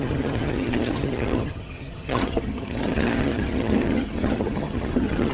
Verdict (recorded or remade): remade